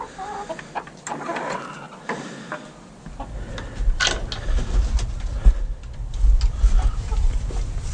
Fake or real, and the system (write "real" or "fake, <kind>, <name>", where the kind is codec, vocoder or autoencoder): real